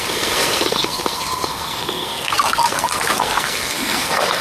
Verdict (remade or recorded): remade